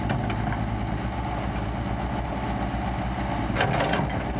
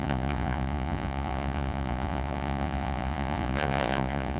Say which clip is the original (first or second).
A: first